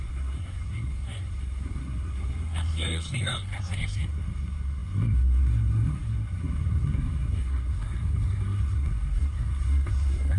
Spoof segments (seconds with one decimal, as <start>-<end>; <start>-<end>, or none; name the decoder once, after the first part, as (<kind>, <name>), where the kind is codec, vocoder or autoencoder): 0.0-10.4 (codec, SNAC)